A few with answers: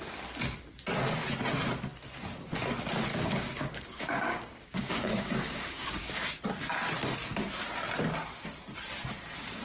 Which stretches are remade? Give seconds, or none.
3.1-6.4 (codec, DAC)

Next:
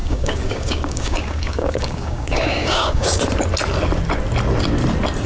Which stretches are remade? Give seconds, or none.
0.0-3.2 (codec, DAC)